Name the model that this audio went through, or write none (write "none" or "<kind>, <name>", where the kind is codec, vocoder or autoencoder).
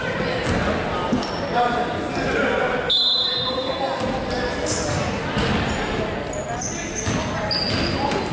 none